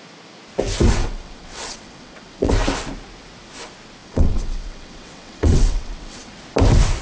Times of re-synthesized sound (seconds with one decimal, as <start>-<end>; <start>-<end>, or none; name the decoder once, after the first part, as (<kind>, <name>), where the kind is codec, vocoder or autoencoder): 1.0-2.5 (vocoder, WaveNeXt); 4.0-6.3